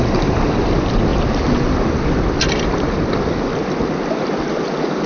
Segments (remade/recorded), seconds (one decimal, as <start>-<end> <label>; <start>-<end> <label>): 0.0-5.1 recorded